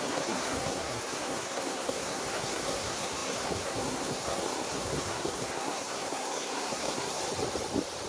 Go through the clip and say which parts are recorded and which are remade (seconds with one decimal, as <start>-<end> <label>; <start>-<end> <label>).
0.0-7.2 remade; 7.2-8.1 recorded